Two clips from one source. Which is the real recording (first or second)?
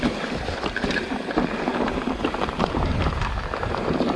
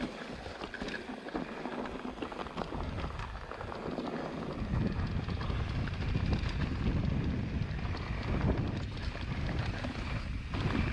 second